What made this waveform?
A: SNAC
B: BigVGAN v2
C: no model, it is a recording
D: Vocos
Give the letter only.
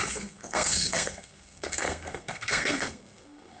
A